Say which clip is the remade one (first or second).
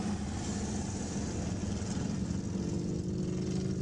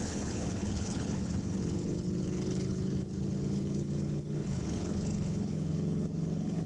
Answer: second